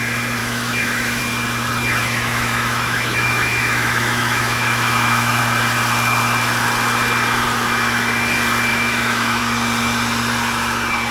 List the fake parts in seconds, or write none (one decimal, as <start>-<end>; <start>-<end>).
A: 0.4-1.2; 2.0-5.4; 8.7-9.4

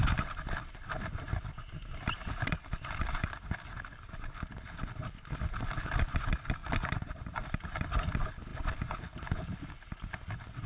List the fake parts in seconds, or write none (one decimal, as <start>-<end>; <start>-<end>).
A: 0.0-4.5; 6.6-7.7

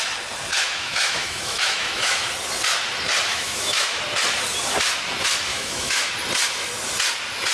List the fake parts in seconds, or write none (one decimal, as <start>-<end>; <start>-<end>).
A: 0.5-2.2; 3.3-4.0; 5.5-6.1

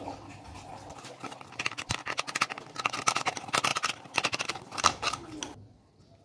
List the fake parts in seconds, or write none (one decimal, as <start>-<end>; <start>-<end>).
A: none